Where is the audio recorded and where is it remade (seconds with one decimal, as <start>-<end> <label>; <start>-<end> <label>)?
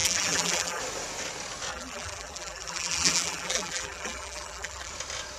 0.0-0.8 remade; 0.8-1.7 recorded; 1.7-4.9 remade; 4.9-5.4 recorded